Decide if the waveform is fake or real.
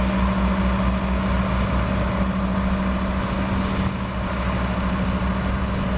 real